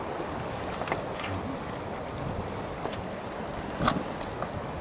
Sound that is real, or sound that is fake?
real